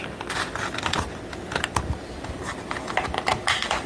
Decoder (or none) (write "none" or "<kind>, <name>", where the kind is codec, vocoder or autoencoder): vocoder, BigVGAN v2